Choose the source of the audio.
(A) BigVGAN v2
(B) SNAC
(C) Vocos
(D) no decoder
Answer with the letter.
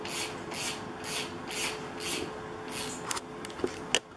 D